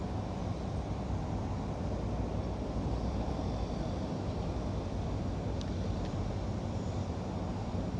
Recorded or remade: remade